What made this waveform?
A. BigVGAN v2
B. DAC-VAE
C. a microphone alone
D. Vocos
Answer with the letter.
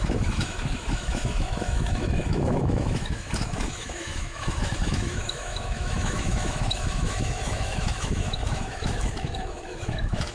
B